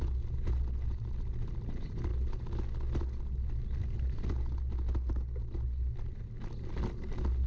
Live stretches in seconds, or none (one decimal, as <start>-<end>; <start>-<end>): 0.0-7.5